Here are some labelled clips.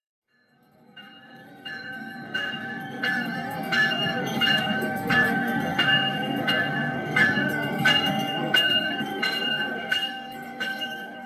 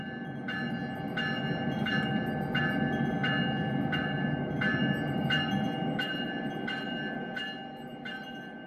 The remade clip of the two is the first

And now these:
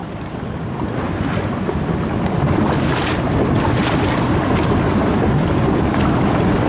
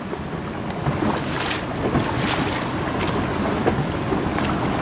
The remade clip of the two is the first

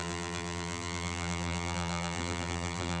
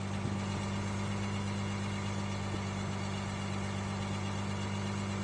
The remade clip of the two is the first